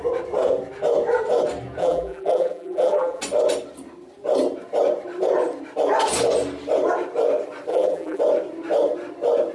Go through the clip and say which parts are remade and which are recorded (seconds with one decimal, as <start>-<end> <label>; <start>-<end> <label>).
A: 0.0-1.8 recorded; 1.8-3.2 remade; 3.2-7.7 recorded; 7.7-8.2 remade; 8.2-9.5 recorded